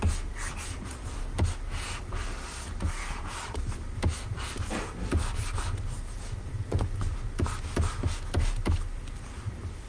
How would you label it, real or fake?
real